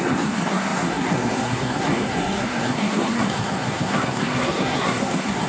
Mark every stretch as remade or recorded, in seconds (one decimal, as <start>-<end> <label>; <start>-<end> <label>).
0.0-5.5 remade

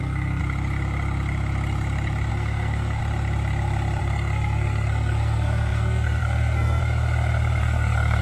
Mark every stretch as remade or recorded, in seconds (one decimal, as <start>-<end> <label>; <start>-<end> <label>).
0.0-0.4 remade; 0.4-2.3 recorded; 2.3-3.0 remade; 3.0-4.0 recorded; 4.0-6.8 remade; 6.8-7.6 recorded; 7.6-8.2 remade

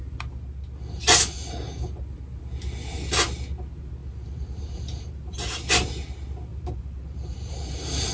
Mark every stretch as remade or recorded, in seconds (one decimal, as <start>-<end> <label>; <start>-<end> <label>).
0.0-4.0 recorded; 4.0-5.9 remade; 5.9-6.5 recorded; 6.5-8.1 remade